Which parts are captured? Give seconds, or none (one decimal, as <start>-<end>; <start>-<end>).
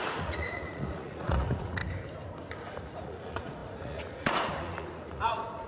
1.8-2.8